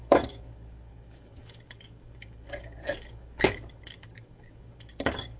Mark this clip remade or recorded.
remade